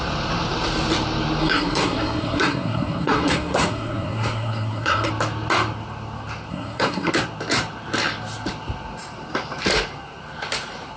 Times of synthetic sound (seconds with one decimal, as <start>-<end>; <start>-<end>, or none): 1.4-5.1; 6.5-7.1